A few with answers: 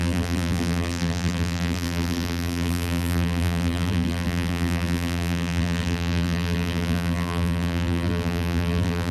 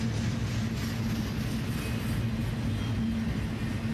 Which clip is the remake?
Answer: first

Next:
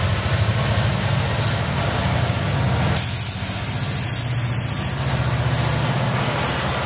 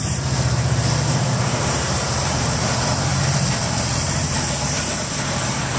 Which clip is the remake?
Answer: second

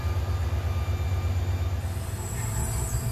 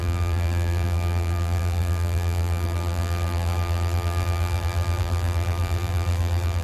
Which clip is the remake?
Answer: second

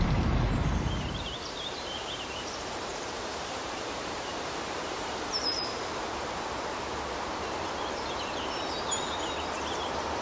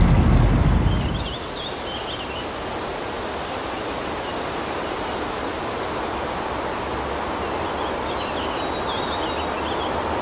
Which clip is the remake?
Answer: first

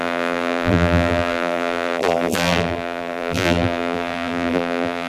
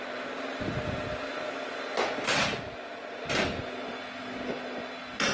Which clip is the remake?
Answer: first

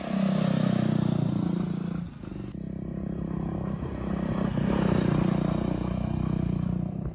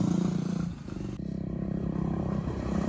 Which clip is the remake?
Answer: second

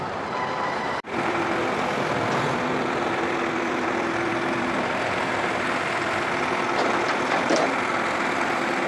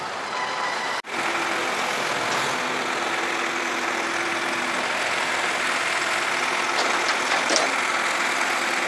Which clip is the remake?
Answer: first